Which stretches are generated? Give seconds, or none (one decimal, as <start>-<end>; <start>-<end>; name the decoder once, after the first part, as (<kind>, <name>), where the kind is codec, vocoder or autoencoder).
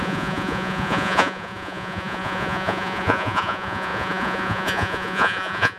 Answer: 0.0-5.8 (vocoder, Vocos)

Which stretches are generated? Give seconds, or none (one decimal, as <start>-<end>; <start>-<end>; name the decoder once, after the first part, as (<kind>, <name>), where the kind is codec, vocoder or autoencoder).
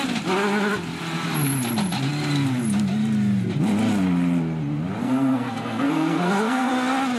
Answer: 5.0-6.7 (codec, SNAC)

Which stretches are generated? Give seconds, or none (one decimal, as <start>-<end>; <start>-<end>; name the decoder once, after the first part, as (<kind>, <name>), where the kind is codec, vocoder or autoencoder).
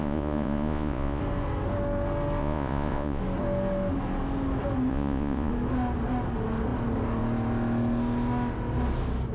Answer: 0.0-1.2 (vocoder, Vocos); 2.4-3.2; 4.9-5.5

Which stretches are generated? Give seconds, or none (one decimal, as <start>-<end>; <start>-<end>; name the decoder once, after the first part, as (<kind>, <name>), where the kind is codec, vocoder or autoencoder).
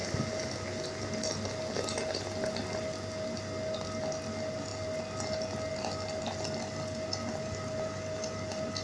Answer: none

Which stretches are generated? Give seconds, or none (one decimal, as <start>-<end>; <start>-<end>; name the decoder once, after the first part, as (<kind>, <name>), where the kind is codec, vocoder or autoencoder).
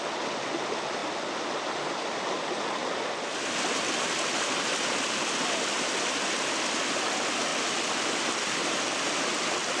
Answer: none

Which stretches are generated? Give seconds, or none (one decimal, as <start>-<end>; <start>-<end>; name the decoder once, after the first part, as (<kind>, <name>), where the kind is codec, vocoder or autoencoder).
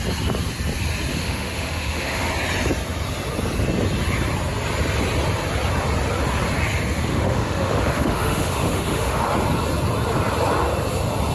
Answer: 1.1-2.3 (autoencoder, DAC-VAE); 7.1-9.2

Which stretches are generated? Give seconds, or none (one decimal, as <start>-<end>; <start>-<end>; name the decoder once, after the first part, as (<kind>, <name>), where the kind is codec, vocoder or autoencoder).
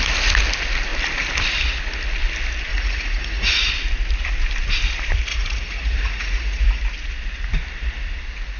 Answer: 2.7-3.7 (vocoder, Vocos); 5.3-6.8